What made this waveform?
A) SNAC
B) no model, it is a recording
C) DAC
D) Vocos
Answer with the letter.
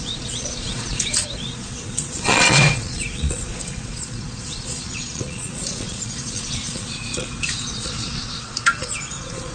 D